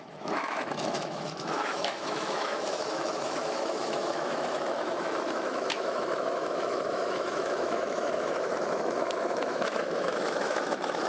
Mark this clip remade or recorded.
remade